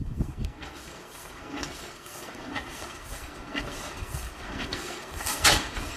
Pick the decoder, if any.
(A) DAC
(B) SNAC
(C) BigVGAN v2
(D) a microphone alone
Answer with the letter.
B